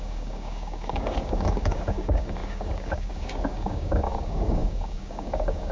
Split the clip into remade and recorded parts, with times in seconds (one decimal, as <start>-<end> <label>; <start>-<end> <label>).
0.0-5.7 remade

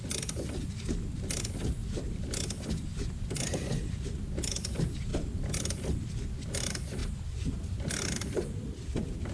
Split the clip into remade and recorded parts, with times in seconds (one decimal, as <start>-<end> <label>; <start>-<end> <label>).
0.0-9.3 recorded

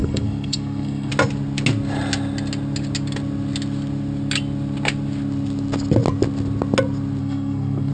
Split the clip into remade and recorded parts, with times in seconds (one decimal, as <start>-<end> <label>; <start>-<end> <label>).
0.0-1.1 remade; 1.1-7.2 recorded; 7.2-7.9 remade